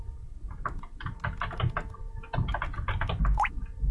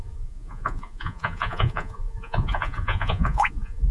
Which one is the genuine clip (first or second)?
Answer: first